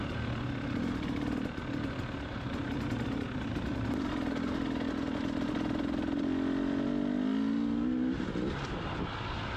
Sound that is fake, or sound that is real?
real